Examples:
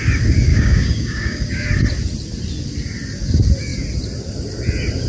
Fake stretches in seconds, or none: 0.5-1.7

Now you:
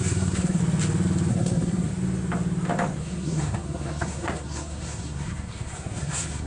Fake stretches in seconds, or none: 0.0-0.6; 1.3-1.9; 3.0-6.5